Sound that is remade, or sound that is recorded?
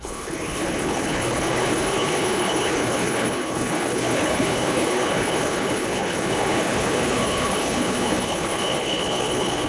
remade